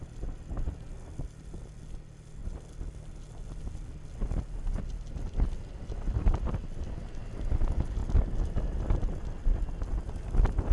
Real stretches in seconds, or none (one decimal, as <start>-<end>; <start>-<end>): 0.0-10.7